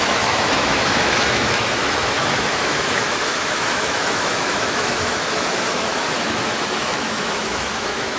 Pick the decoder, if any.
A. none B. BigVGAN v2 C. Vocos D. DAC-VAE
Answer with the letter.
D